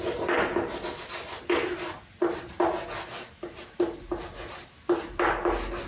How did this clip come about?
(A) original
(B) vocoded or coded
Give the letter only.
A